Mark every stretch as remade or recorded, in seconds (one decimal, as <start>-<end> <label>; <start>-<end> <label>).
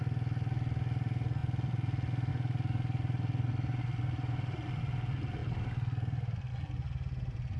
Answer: 0.0-7.6 recorded